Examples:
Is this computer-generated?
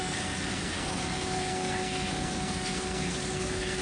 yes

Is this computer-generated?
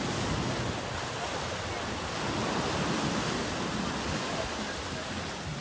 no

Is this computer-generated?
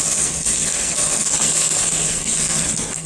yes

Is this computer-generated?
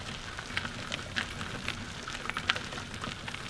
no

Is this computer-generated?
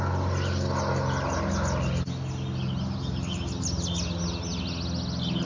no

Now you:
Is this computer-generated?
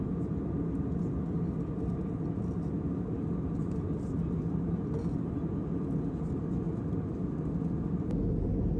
no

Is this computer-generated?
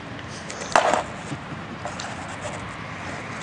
no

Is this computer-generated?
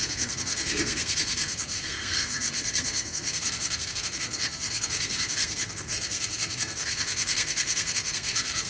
yes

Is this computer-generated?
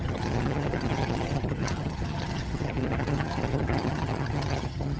yes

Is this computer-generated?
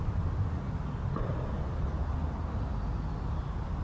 no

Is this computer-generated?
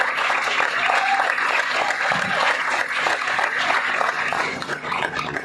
yes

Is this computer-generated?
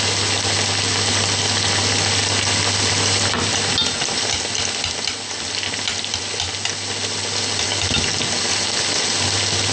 no